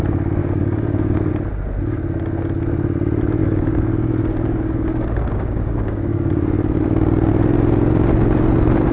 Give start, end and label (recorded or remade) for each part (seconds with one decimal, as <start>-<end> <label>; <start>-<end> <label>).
0.0-0.4 recorded; 0.4-1.3 remade; 1.3-3.4 recorded; 3.4-7.3 remade; 7.3-8.9 recorded